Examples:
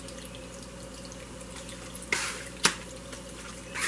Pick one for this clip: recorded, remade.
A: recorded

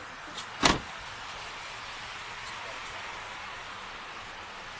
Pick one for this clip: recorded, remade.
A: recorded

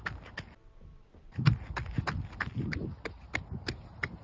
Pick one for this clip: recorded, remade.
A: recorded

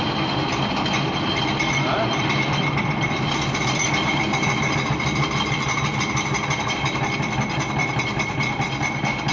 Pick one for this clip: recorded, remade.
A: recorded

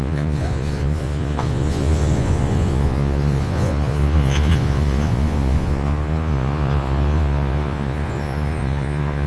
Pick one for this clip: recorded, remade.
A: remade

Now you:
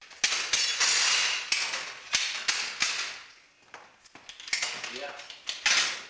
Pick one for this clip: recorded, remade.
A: recorded